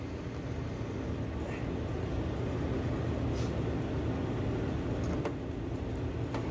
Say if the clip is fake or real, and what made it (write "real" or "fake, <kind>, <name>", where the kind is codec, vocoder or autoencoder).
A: real